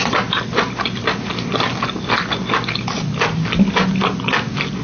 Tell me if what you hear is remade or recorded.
recorded